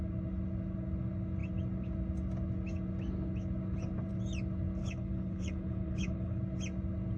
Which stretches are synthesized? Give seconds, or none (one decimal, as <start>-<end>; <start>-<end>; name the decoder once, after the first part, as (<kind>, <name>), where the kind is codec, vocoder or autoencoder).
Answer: 4.8-6.4 (codec, HILCodec)